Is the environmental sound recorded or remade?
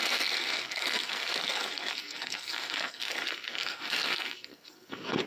remade